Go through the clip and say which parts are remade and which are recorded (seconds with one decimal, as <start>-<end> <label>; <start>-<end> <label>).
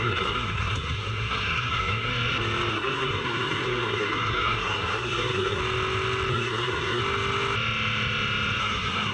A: 0.0-2.1 remade; 2.1-2.7 recorded; 2.7-5.6 remade; 5.6-6.3 recorded; 6.3-7.0 remade; 7.0-8.6 recorded; 8.6-9.1 remade